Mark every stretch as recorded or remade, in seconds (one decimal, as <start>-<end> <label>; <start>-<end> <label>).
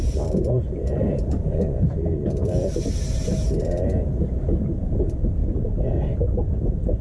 0.0-5.4 remade; 5.4-6.6 recorded; 6.6-7.0 remade